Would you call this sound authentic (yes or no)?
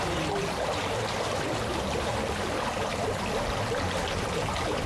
yes